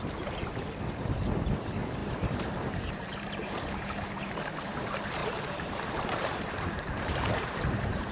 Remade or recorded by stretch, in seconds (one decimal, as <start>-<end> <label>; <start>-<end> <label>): 0.0-2.0 recorded; 2.0-4.5 remade; 4.5-5.2 recorded; 5.2-7.6 remade; 7.6-8.1 recorded